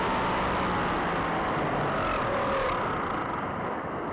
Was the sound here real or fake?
real